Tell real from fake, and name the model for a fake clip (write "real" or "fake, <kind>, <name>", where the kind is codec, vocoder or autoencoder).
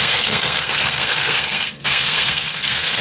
fake, codec, SNAC